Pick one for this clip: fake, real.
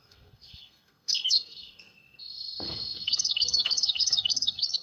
fake